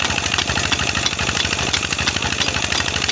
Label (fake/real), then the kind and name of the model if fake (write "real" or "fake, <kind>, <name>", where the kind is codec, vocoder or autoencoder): real